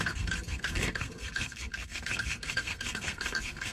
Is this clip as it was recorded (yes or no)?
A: no